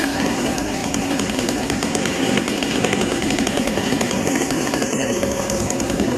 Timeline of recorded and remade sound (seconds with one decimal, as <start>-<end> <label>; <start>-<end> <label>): 0.0-6.2 remade